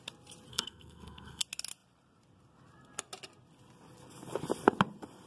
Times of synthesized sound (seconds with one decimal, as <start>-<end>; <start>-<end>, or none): 0.5-1.4